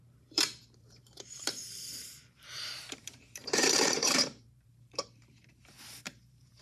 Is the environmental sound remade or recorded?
remade